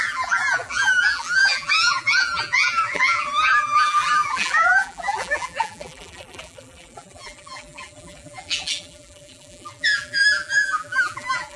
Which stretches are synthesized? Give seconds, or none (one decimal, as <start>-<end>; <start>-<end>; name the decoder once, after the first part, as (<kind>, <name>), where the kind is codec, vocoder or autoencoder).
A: 0.0-11.6 (vocoder, BigVGAN v2)